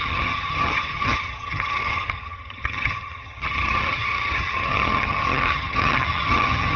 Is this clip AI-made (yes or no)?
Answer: yes